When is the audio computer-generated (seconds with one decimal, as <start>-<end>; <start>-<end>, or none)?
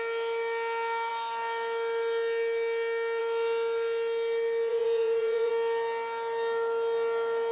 4.7-5.5